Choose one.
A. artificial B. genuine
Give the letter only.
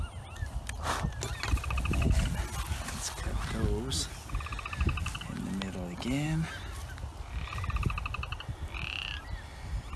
B